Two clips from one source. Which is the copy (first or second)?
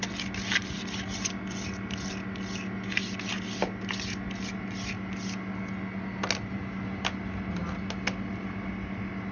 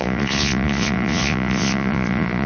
second